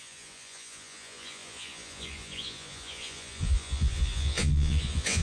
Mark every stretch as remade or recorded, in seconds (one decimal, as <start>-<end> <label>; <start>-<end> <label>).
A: 0.0-5.2 remade